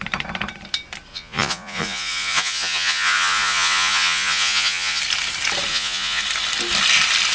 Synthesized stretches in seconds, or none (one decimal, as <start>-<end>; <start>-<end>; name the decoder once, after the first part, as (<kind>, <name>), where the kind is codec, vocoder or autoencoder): 1.1-5.0 (vocoder, Vocos); 5.7-6.2